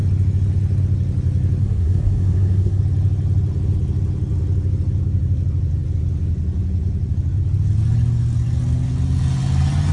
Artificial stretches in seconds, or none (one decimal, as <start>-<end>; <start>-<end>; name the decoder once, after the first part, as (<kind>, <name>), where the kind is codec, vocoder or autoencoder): 1.6-2.8 (codec, SNAC)